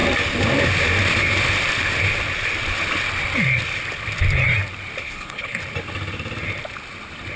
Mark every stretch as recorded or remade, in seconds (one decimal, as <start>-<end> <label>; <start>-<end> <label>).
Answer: 0.0-5.0 recorded; 5.0-5.6 remade; 5.6-7.4 recorded